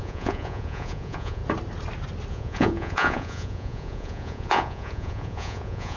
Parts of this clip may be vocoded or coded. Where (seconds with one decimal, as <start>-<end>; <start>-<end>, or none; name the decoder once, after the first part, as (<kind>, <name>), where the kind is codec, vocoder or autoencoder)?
0.0-1.4 (vocoder, Vocos); 2.3-6.0